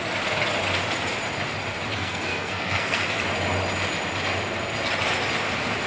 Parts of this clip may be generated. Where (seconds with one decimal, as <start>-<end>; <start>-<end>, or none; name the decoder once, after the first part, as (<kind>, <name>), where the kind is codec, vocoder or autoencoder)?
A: 1.9-3.2 (codec, SNAC)